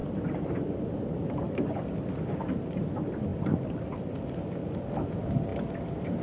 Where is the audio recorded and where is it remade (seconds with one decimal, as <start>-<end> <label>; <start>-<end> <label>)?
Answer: 0.0-2.1 remade; 2.1-5.5 recorded; 5.5-6.2 remade